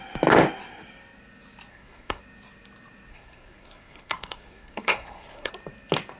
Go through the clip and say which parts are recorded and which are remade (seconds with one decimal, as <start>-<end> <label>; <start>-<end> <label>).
0.0-1.7 recorded; 1.7-2.2 remade; 2.2-3.1 recorded; 3.1-5.5 remade; 5.5-6.2 recorded